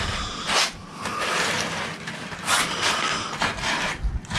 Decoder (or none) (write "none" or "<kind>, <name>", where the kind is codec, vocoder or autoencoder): none